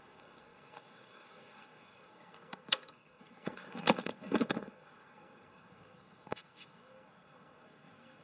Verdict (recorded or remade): remade